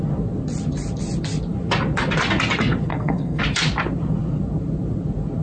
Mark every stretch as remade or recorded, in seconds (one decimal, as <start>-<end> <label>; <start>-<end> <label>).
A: 0.0-2.9 recorded; 2.9-3.4 remade; 3.4-5.4 recorded